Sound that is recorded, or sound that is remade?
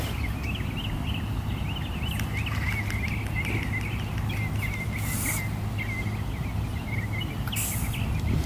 recorded